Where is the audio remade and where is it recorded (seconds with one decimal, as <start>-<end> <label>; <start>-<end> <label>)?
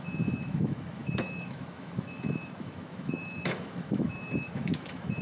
0.0-5.2 remade